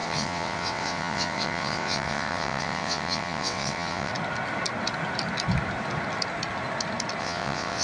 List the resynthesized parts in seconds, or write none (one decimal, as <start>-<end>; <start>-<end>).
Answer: 0.0-4.1; 7.2-7.8